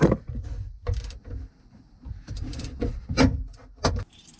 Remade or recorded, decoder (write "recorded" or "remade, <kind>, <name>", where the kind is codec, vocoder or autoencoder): recorded